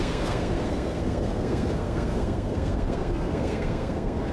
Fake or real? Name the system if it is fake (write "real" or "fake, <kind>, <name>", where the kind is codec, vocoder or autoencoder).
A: fake, codec, SNAC